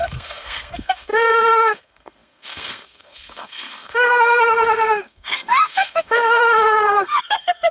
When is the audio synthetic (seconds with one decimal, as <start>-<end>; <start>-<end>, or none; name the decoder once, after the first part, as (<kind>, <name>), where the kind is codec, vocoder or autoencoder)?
0.0-7.7 (codec, SNAC)